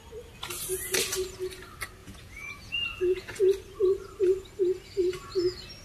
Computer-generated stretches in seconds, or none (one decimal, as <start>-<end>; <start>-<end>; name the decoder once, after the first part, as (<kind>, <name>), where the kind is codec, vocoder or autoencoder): 2.0-3.4 (vocoder, Vocos)